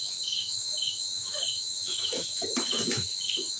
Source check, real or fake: fake